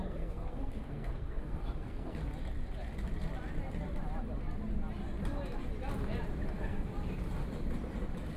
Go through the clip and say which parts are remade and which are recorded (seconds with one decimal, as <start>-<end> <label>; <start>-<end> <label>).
0.0-2.2 remade; 2.2-6.5 recorded; 6.5-6.9 remade; 6.9-8.4 recorded